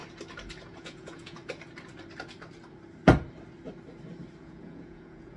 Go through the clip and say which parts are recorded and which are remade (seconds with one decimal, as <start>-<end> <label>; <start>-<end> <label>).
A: 0.0-0.7 recorded; 0.7-1.4 remade; 1.4-4.4 recorded; 4.4-5.4 remade